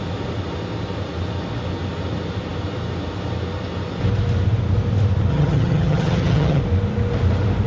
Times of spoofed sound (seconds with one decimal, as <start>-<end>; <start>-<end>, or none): 5.3-6.6